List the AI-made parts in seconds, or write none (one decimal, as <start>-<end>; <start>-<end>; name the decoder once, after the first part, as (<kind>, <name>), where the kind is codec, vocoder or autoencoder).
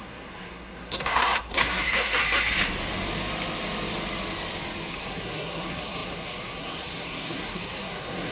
0.0-2.2 (codec, SNAC); 4.9-8.3